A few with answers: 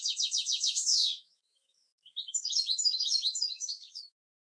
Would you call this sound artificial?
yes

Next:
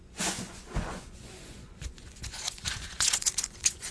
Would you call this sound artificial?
yes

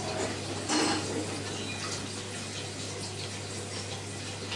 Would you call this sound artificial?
no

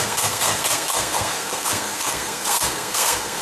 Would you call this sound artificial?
yes